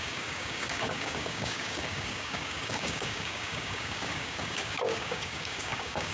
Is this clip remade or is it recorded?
remade